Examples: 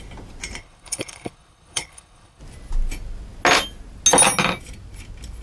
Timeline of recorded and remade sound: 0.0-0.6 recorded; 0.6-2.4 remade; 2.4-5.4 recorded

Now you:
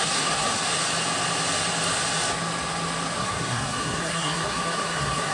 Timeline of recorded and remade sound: 0.0-0.6 remade; 0.6-3.2 recorded; 3.2-5.3 remade

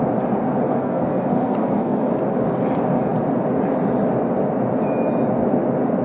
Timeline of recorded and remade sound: 0.0-0.7 recorded; 0.7-2.1 remade; 2.1-6.0 recorded

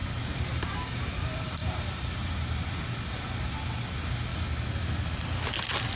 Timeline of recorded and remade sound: 0.0-1.6 recorded; 1.6-2.3 remade; 2.3-6.0 recorded

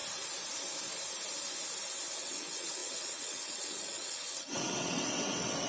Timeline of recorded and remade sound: 0.0-2.2 recorded; 2.2-5.7 remade

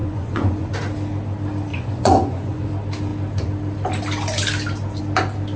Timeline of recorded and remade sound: 0.0-0.7 remade; 0.7-1.7 recorded; 1.7-2.7 remade; 2.7-5.6 recorded